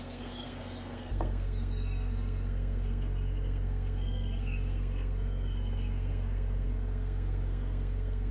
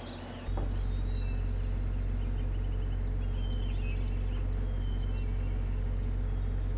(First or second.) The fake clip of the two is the first